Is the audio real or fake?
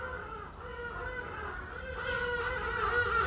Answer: real